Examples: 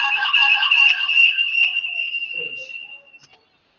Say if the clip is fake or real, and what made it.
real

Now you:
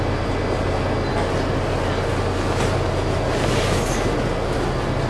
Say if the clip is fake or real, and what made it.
real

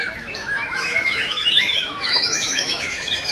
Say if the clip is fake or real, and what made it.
fake, autoencoder, DAC-VAE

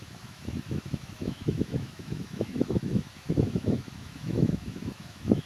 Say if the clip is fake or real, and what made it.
fake, autoencoder, DAC-VAE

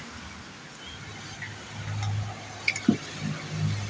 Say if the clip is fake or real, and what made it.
real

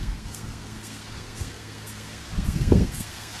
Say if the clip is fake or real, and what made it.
fake, codec, SNAC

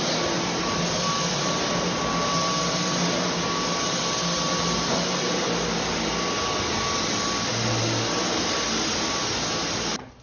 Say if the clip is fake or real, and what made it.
real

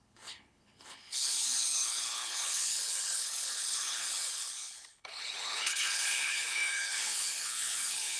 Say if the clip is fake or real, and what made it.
fake, codec, HILCodec